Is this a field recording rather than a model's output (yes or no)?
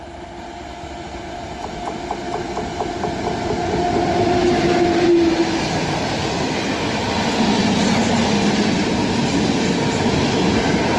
yes